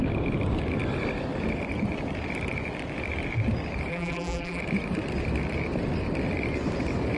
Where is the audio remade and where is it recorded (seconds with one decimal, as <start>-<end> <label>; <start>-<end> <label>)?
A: 0.0-3.9 recorded; 3.9-4.6 remade; 4.6-7.2 recorded